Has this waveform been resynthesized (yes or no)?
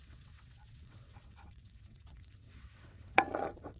yes